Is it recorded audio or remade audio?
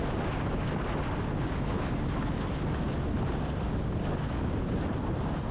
recorded